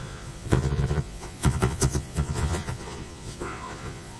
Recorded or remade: remade